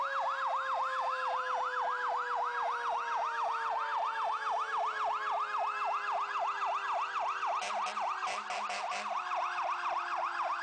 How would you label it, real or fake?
real